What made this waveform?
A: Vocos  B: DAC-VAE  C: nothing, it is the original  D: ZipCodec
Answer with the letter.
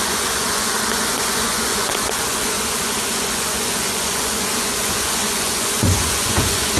A